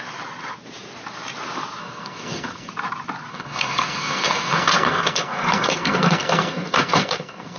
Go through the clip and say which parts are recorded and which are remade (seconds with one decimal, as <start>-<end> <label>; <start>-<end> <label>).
0.0-1.8 recorded; 1.8-2.7 remade; 2.7-3.3 recorded; 3.3-7.6 remade